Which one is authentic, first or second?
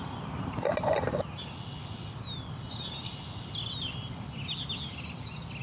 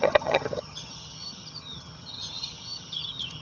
first